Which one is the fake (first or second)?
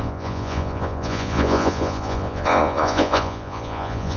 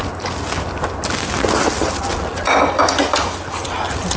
first